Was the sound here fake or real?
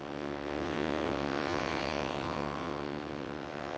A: fake